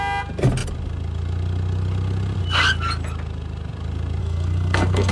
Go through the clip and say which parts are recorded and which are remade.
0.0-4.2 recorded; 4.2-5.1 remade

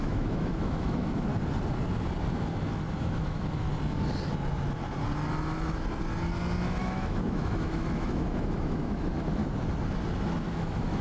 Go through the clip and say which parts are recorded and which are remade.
0.0-1.3 remade; 1.3-3.0 recorded; 3.0-3.7 remade; 3.7-6.8 recorded; 6.8-9.4 remade; 9.4-10.5 recorded; 10.5-11.0 remade

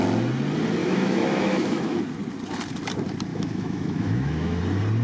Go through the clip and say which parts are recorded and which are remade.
0.0-0.8 recorded; 0.8-2.0 remade; 2.0-3.3 recorded; 3.3-4.6 remade; 4.6-5.0 recorded

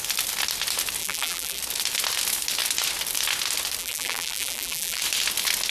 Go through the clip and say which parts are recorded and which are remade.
0.0-1.0 recorded; 1.0-1.6 remade; 1.6-3.8 recorded; 3.8-5.0 remade; 5.0-5.7 recorded

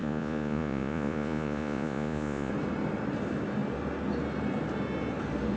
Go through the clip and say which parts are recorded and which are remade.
0.0-2.5 remade; 2.5-5.6 recorded